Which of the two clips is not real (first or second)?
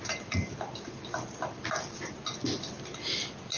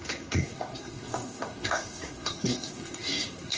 second